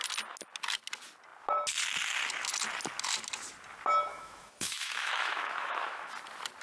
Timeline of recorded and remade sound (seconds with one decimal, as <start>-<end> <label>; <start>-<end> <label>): 0.0-4.1 recorded; 4.1-6.1 remade; 6.1-6.6 recorded